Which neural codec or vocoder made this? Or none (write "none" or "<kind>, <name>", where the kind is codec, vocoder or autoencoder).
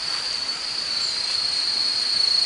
none